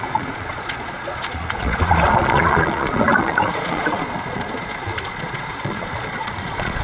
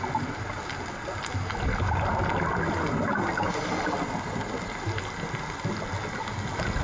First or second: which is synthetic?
first